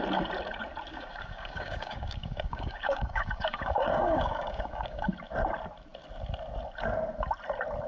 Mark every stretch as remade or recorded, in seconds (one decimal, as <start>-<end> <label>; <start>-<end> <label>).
0.0-0.9 recorded; 0.9-5.1 remade; 5.1-7.9 recorded